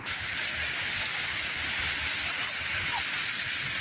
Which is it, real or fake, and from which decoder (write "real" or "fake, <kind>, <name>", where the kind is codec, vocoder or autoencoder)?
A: real